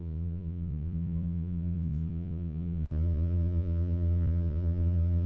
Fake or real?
fake